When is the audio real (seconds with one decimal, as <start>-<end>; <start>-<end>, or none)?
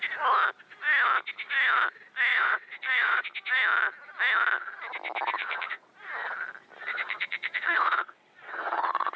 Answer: 0.0-2.3; 3.2-5.4; 5.9-6.8